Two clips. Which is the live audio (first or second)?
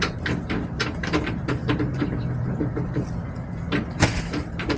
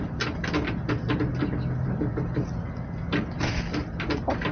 second